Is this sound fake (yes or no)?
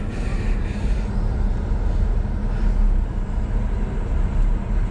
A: no